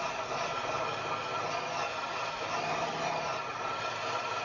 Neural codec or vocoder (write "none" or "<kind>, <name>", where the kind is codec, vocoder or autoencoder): none